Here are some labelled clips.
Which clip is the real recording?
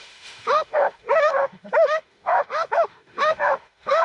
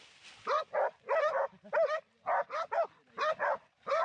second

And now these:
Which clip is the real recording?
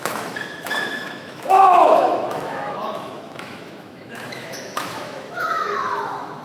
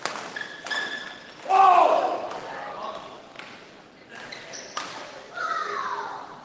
second